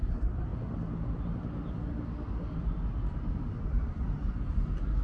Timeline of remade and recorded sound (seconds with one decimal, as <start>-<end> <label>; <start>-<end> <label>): 0.0-5.0 recorded